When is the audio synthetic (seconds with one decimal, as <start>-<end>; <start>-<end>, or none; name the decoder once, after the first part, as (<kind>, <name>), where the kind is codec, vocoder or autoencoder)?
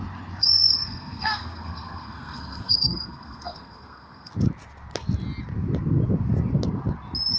0.4-4.3 (codec, SNAC)